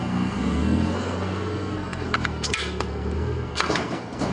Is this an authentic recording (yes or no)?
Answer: no